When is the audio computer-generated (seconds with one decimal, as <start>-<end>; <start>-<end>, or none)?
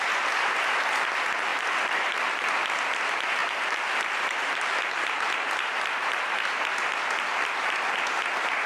1.5-2.1; 3.4-5.0